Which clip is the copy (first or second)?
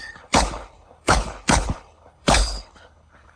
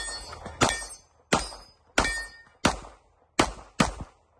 first